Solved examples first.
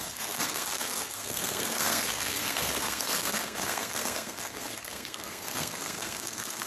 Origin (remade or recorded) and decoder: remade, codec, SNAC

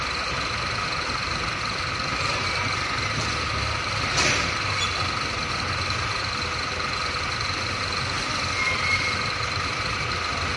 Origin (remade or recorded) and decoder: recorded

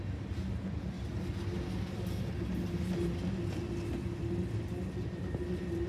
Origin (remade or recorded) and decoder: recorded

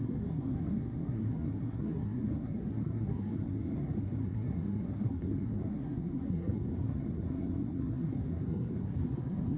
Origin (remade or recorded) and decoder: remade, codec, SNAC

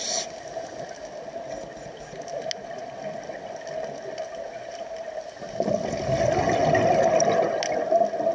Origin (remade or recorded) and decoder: recorded